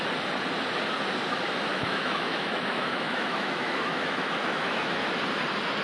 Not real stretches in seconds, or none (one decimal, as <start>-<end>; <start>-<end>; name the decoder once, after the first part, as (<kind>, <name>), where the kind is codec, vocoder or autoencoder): 1.7-5.2 (autoencoder, DAC-VAE)